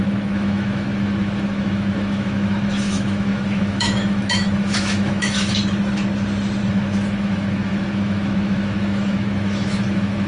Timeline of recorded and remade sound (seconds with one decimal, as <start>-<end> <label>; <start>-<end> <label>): 0.0-5.6 remade; 5.6-6.7 recorded; 6.7-10.3 remade